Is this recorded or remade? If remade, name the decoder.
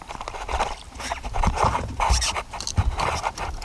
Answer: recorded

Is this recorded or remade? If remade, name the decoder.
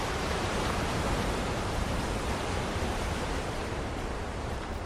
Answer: remade, vocoder, BigVGAN v2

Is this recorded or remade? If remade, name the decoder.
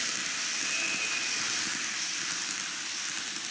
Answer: recorded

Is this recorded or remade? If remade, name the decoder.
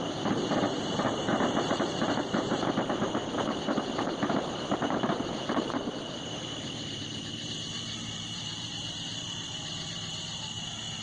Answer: remade, vocoder, BigVGAN v2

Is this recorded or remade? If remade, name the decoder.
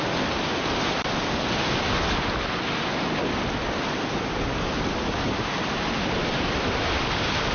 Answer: recorded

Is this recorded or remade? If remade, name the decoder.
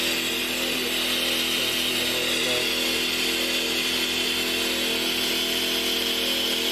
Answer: recorded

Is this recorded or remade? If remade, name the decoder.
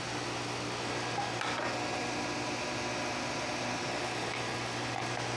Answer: recorded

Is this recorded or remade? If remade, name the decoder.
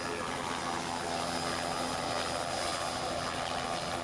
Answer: recorded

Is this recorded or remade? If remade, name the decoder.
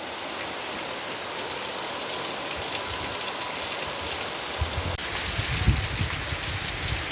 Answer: recorded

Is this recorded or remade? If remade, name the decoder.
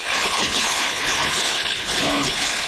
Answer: remade, codec, HILCodec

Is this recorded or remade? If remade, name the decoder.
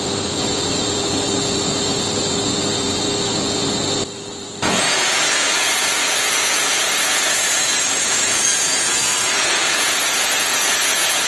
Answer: remade, vocoder, Vocos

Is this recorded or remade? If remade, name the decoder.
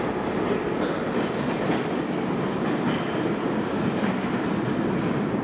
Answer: recorded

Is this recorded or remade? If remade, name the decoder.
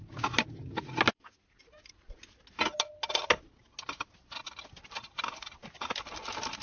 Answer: recorded